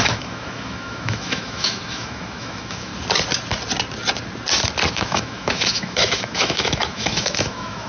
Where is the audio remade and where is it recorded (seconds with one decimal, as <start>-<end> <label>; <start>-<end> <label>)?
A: 0.0-2.9 remade; 2.9-4.9 recorded; 4.9-7.9 remade